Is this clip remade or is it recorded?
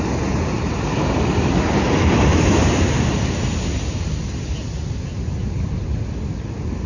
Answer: recorded